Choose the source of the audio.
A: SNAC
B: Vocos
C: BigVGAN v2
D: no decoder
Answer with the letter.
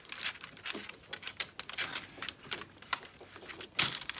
D